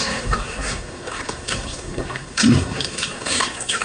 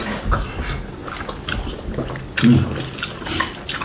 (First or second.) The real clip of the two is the second